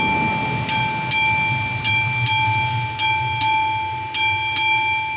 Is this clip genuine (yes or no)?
yes